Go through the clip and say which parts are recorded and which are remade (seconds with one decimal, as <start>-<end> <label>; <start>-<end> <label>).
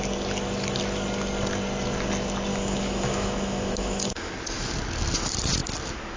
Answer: 0.0-2.5 recorded; 2.5-4.3 remade; 4.3-6.2 recorded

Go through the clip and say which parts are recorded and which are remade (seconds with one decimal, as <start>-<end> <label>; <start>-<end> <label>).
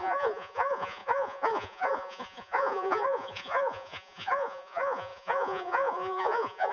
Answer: 0.0-6.7 remade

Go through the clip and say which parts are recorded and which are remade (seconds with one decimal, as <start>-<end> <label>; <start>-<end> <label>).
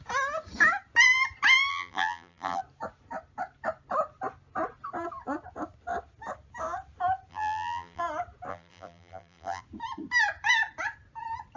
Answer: 0.0-1.7 recorded; 1.7-2.6 remade; 2.6-7.3 recorded; 7.3-8.0 remade; 8.0-8.5 recorded; 8.5-9.6 remade; 9.6-11.6 recorded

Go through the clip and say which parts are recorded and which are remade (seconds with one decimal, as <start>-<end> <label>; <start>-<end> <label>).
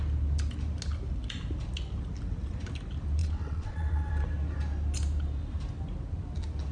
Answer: 0.0-3.2 recorded; 3.2-4.1 remade; 4.1-6.7 recorded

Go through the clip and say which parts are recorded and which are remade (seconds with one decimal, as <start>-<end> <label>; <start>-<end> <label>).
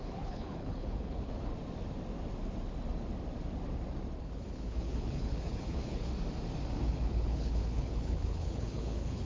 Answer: 0.0-1.5 remade; 1.5-4.2 recorded; 4.2-6.1 remade; 6.1-6.8 recorded; 6.8-9.3 remade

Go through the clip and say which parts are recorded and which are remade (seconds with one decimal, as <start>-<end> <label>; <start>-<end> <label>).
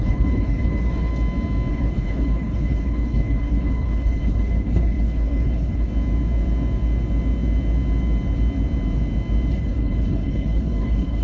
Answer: 0.0-1.1 remade; 1.1-1.7 recorded; 1.7-5.9 remade; 5.9-9.5 recorded; 9.5-11.2 remade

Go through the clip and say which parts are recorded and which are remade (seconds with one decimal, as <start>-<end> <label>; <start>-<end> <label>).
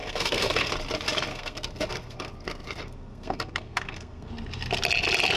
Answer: 0.0-0.7 remade; 0.7-1.3 recorded; 1.3-4.3 remade; 4.3-5.4 recorded